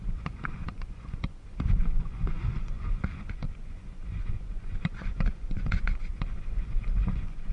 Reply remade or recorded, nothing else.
remade